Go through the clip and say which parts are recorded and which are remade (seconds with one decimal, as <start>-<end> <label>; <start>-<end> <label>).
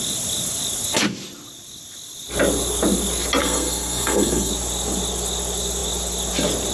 0.0-3.4 recorded; 3.4-4.5 remade; 4.5-6.7 recorded